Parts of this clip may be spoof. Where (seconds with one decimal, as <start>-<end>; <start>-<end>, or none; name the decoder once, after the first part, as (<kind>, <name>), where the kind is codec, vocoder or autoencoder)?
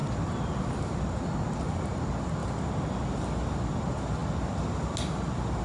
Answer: none